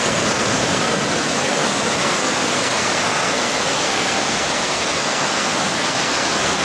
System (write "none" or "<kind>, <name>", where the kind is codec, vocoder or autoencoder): codec, SNAC